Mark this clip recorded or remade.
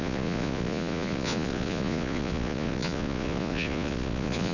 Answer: remade